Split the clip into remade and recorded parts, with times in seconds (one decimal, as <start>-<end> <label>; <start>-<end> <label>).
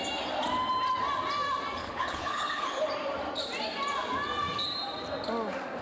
0.0-1.8 recorded; 1.8-2.9 remade; 2.9-5.8 recorded